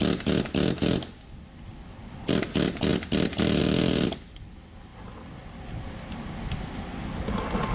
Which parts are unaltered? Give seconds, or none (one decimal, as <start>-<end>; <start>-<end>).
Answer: 0.0-7.7